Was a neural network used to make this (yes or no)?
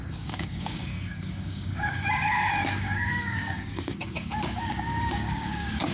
yes